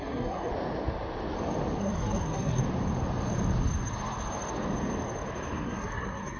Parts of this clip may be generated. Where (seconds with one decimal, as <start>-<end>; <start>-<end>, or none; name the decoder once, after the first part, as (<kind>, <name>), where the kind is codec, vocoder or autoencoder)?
0.0-0.5 (codec, SNAC); 1.8-2.6; 5.6-6.4